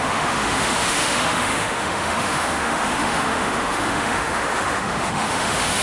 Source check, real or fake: fake